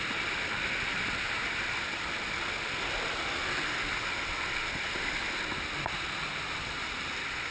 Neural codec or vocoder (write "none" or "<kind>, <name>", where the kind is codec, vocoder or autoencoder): none